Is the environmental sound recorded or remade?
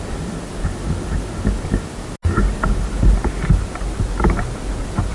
recorded